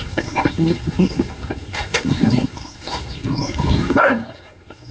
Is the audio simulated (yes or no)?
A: yes